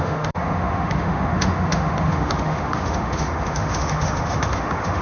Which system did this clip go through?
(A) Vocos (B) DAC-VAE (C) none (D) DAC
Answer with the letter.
B